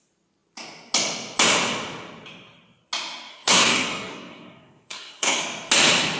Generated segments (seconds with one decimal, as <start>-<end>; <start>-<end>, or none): 3.3-5.4